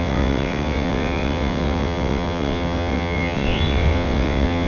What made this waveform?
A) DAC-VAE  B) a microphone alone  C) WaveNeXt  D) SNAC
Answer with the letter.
C